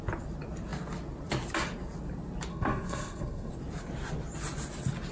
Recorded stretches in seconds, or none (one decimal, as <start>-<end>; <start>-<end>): 0.0-2.5; 3.5-5.1